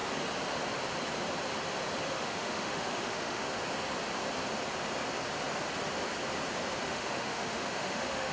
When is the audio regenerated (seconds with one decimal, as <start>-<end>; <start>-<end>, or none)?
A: 2.1-3.4; 6.9-8.3